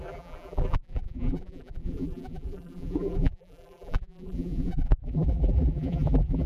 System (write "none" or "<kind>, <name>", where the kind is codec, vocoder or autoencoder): vocoder, BigVGAN v2